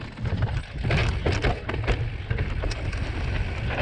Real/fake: real